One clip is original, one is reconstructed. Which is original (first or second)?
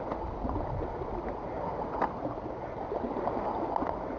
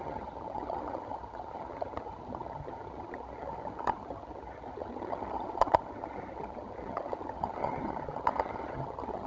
first